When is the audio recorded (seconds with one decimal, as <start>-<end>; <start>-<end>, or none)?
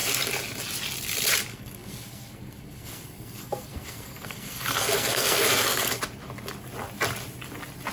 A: 0.0-1.5; 6.0-7.9